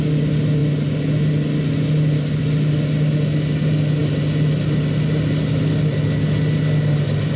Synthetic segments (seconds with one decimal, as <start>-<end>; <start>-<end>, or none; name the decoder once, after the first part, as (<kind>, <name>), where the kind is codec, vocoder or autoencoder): none